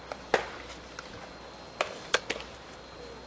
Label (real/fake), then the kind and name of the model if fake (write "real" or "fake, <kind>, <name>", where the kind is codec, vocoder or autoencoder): real